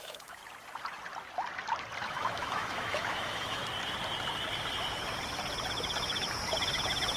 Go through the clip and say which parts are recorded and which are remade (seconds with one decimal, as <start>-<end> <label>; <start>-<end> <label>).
0.0-0.4 remade; 0.4-2.1 recorded; 2.1-3.6 remade; 3.6-7.2 recorded